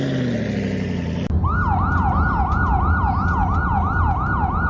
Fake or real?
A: real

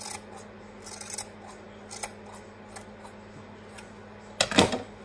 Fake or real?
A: real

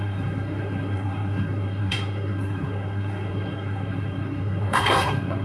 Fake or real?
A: fake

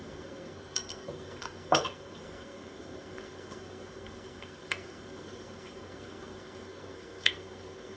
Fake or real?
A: fake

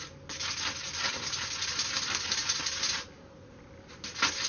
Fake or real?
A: real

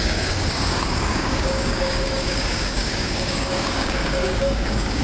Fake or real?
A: fake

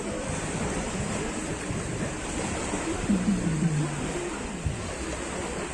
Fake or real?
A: real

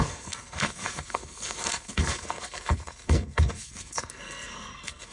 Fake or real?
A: fake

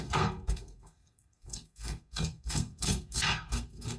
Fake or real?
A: fake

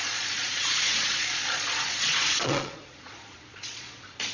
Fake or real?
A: fake